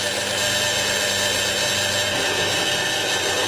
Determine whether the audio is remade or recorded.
recorded